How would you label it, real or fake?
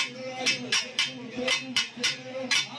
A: real